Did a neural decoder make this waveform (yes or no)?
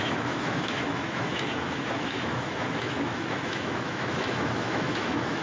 yes